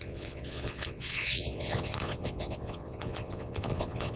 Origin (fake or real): fake